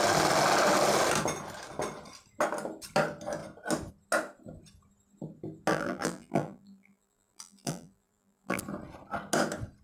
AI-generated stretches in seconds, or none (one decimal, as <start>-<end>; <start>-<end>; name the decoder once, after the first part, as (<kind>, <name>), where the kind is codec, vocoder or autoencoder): 5.7-8.6 (vocoder, BigVGAN v2)